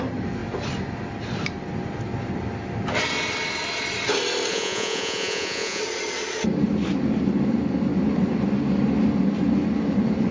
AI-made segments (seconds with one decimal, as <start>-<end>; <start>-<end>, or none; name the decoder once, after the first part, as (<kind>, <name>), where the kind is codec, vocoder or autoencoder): 4.5-5.8 (vocoder, Vocos)